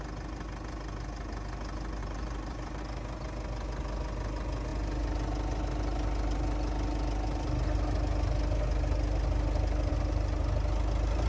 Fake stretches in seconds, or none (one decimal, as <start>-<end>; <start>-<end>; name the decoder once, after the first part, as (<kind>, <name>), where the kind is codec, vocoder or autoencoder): 2.0-2.8 (vocoder, BigVGAN v2)